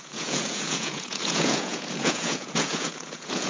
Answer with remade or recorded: remade